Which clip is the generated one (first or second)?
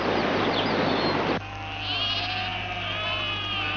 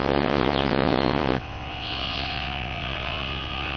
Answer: second